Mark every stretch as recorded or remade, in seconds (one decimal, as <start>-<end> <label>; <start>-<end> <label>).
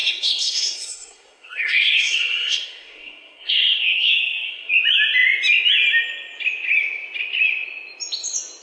0.0-4.7 remade; 4.7-8.6 recorded